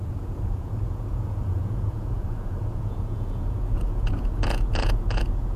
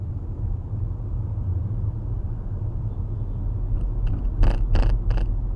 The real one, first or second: second